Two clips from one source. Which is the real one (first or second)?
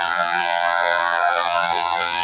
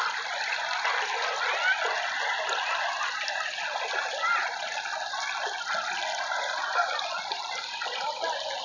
second